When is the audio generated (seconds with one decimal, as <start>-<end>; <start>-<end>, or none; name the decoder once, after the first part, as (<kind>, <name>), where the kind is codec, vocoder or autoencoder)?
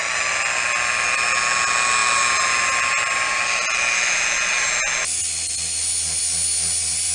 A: none